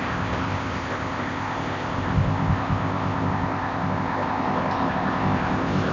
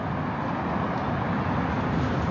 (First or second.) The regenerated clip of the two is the first